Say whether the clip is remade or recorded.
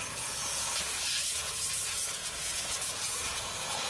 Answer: remade